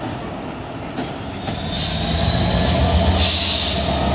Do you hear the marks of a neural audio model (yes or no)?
no